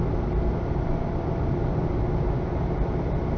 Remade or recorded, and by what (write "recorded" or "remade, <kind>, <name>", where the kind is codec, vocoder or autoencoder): recorded